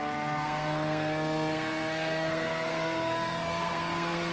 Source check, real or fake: fake